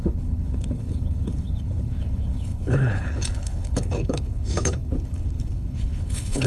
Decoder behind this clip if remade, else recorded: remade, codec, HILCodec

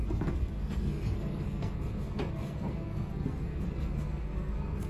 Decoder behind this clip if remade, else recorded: remade, codec, SNAC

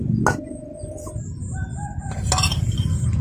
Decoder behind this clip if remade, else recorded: recorded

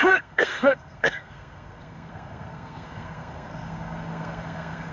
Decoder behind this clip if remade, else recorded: remade, codec, SNAC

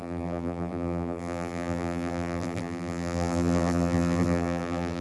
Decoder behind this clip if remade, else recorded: remade, vocoder, BigVGAN v2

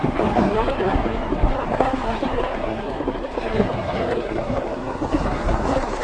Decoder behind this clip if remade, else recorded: remade, codec, SNAC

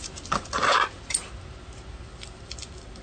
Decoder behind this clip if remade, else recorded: recorded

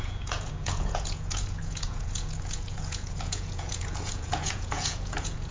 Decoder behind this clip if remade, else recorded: remade, vocoder, Vocos